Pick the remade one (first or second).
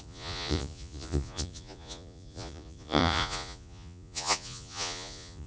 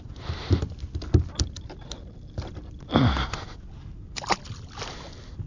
first